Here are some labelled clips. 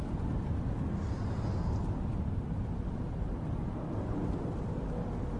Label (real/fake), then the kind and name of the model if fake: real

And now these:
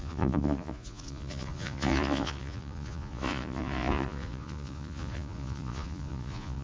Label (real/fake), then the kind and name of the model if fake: fake, vocoder, Vocos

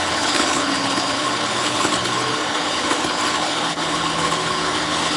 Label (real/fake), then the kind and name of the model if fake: fake, codec, HILCodec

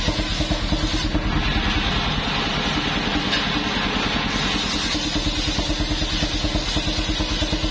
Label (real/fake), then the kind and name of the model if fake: real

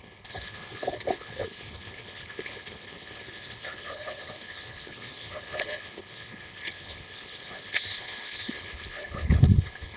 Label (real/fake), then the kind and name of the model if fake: fake, codec, HILCodec